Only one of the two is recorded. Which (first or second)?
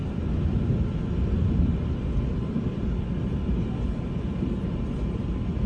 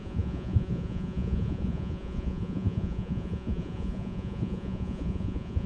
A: first